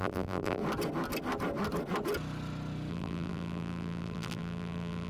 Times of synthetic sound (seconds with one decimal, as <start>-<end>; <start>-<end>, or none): 0.0-0.6; 2.9-5.1